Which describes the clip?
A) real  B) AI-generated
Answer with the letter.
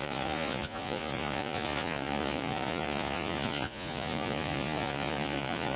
B